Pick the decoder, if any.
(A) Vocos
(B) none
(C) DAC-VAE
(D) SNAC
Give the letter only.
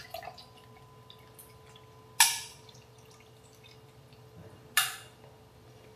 B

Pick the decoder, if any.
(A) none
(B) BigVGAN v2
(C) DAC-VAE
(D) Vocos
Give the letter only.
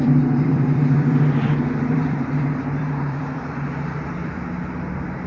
B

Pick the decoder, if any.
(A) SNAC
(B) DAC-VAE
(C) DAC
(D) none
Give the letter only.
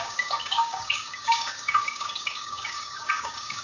C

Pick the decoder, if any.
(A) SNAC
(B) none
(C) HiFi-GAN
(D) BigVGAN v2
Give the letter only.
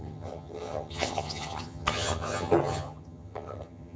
C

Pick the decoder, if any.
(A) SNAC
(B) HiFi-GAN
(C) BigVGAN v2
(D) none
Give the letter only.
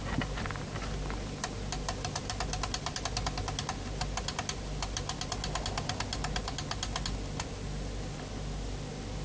D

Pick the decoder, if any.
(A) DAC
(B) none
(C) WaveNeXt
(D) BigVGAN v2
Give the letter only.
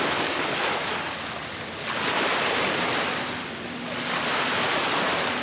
B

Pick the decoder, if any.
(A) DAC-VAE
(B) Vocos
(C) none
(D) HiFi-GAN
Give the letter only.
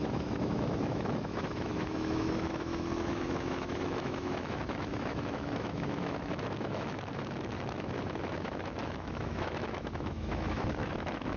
A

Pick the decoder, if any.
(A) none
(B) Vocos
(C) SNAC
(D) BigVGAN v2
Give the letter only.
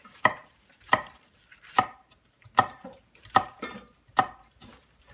D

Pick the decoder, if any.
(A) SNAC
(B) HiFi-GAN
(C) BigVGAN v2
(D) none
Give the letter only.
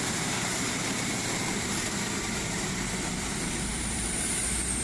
C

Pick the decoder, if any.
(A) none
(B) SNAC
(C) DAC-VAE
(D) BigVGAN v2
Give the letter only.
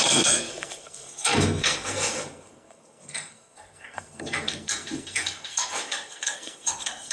B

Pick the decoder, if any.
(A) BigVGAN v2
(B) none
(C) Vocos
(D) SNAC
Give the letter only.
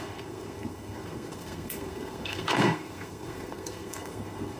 D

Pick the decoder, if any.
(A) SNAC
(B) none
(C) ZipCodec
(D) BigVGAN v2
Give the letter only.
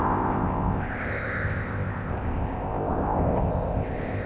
C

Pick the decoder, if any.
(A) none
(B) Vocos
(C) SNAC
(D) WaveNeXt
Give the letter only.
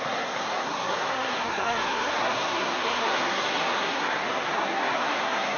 C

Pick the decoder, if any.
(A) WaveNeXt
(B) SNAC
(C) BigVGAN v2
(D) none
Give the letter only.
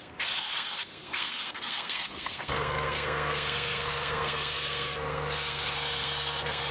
B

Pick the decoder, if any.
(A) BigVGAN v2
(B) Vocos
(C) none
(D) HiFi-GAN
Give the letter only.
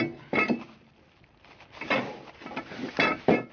C